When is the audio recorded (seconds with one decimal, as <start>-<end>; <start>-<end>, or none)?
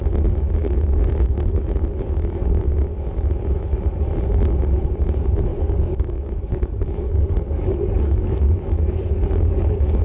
0.0-0.6; 2.6-5.5